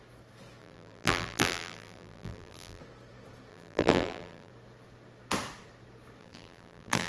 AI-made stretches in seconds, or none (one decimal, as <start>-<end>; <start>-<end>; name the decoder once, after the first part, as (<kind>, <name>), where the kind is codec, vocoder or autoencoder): 0.6-2.8 (vocoder, BigVGAN v2); 3.5-4.5; 6.2-7.1